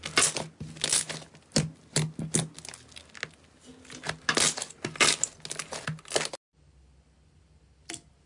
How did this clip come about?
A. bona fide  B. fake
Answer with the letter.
A